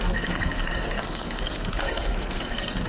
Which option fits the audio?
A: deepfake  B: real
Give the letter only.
A